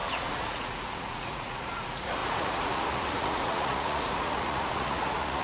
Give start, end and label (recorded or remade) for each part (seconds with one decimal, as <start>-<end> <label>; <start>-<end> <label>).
0.0-5.4 remade

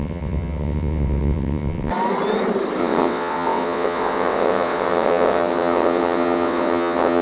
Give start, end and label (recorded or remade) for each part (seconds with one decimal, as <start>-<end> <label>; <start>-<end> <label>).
0.0-1.9 remade; 1.9-2.8 recorded; 2.8-7.2 remade

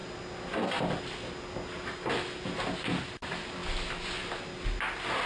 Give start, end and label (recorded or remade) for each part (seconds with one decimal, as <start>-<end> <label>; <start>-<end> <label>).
0.0-5.3 recorded

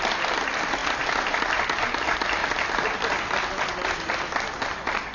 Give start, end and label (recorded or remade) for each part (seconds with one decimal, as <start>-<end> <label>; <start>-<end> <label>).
0.0-5.1 recorded

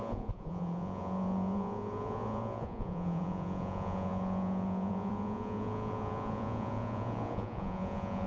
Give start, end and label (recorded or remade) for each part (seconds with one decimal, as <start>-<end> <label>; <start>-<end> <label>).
0.0-8.3 remade

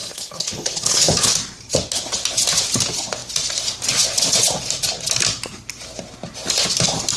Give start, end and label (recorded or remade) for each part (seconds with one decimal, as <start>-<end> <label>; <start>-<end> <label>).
0.0-1.3 remade; 1.3-7.2 recorded